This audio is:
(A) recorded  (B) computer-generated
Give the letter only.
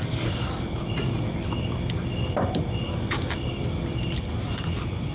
A